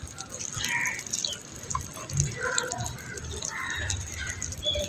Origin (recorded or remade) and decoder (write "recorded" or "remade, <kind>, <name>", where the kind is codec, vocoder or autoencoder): recorded